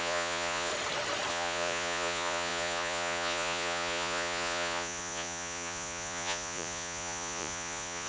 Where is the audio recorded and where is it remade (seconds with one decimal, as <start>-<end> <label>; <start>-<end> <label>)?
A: 0.0-0.7 remade; 0.7-1.3 recorded; 1.3-8.1 remade